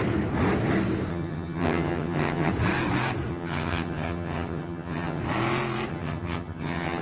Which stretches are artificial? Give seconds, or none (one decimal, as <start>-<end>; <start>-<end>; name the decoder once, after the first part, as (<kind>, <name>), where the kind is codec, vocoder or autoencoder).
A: 1.1-2.5 (vocoder, HiFi-GAN); 3.3-5.2; 5.9-7.0